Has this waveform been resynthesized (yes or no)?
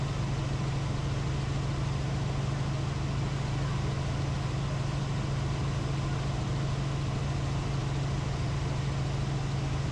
no